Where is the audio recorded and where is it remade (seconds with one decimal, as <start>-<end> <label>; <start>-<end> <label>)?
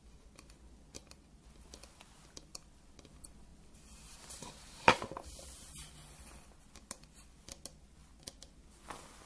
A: 0.0-9.3 recorded